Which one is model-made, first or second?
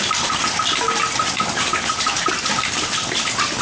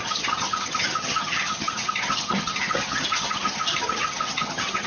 second